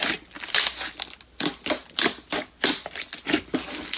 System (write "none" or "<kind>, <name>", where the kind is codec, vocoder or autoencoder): none